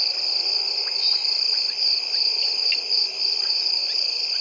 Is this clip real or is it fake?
real